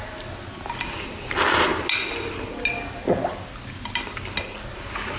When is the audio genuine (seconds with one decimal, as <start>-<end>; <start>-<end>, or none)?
0.0-5.2